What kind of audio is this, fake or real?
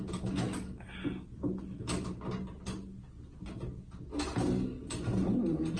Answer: real